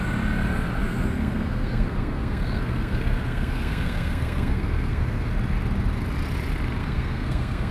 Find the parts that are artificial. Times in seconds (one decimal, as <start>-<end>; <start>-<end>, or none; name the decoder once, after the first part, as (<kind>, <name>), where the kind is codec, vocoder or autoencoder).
0.8-5.3 (codec, SNAC); 6.8-7.7